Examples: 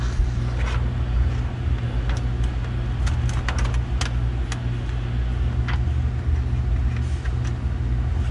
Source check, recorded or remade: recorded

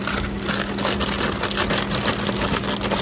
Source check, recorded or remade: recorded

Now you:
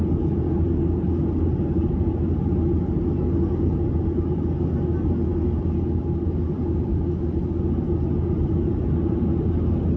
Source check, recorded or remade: recorded